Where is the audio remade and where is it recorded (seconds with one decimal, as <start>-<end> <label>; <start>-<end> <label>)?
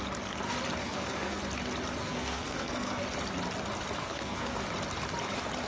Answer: 0.0-0.8 recorded; 0.8-1.4 remade; 1.4-2.0 recorded; 2.0-3.0 remade; 3.0-4.0 recorded; 4.0-4.6 remade; 4.6-5.7 recorded